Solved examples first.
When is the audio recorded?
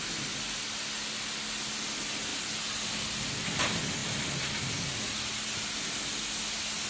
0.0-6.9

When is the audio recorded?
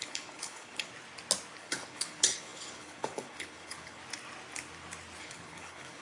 0.9-1.6; 4.0-5.2